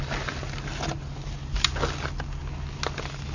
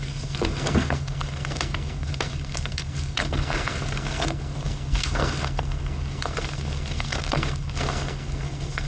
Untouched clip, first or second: first